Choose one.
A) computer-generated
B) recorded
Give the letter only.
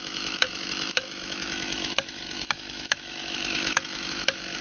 A